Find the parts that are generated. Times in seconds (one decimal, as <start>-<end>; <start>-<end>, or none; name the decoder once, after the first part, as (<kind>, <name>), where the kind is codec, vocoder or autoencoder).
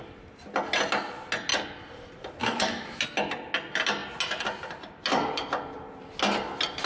2.4-3.0 (autoencoder, DAC-VAE)